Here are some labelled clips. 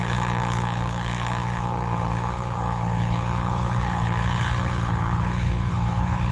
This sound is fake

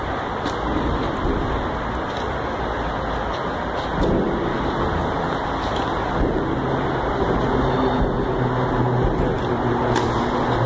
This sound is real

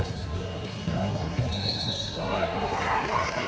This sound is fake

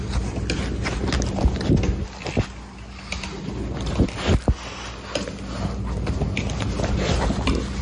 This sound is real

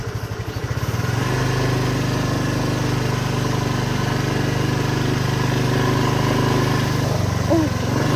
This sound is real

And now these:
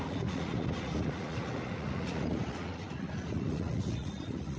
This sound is fake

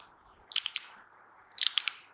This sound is fake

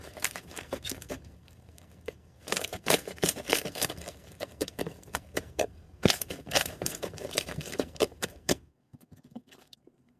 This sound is fake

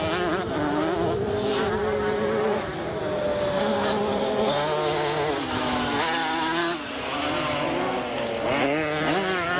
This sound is real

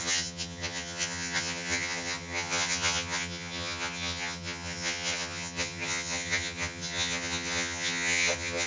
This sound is fake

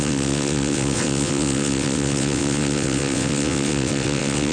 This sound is fake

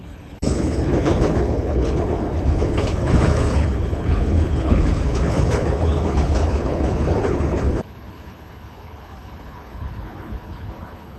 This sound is fake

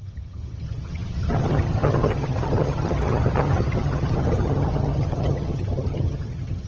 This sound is fake